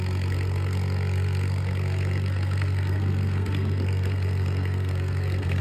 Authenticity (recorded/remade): remade